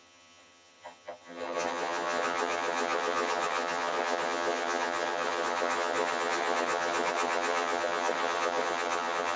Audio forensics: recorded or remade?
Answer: remade